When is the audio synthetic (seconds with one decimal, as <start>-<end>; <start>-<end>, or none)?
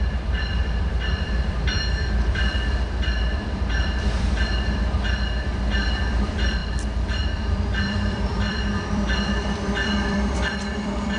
0.0-6.6; 7.2-11.2